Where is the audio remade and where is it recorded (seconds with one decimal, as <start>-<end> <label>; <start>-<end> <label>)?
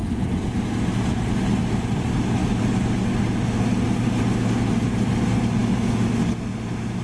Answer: 0.0-5.6 recorded; 5.6-6.2 remade; 6.2-7.0 recorded